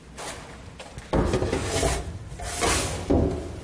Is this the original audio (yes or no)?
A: yes